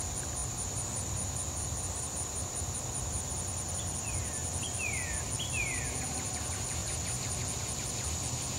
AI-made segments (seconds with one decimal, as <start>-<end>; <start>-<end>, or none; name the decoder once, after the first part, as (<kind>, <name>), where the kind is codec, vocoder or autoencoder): 0.4-3.7 (vocoder, BigVGAN v2); 6.8-7.4